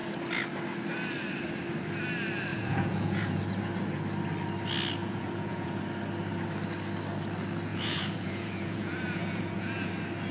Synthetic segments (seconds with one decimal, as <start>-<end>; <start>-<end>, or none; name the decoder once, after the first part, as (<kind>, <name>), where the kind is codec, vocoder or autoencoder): 2.5-3.4 (vocoder, Vocos); 5.0-5.8; 7.7-9.9

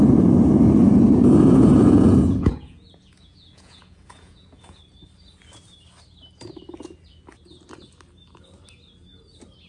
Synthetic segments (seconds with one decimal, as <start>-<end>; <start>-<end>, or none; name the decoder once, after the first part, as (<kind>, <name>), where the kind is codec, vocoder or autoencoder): 0.8-4.8 (vocoder, Vocos)

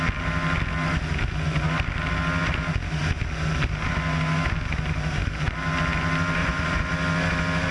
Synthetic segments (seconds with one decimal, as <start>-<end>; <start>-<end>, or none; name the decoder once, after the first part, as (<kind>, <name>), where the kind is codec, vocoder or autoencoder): 6.4-6.9 (vocoder, Vocos)

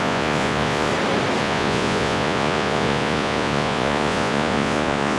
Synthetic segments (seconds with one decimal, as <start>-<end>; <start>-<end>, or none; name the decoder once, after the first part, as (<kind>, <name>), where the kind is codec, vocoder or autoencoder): 0.0-0.9 (vocoder, Vocos); 1.4-5.2